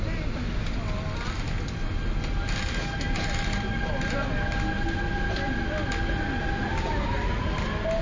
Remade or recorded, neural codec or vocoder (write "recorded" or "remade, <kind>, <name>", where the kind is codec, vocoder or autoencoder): recorded